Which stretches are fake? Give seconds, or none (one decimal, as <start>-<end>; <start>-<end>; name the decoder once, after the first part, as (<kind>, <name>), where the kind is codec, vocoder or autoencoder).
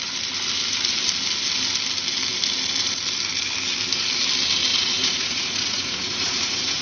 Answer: 4.7-6.8 (vocoder, Vocos)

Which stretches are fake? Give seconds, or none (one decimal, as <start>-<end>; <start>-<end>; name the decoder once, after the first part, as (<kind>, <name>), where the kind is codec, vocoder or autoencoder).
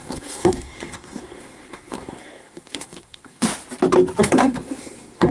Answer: 0.0-3.5 (codec, SNAC); 4.2-5.3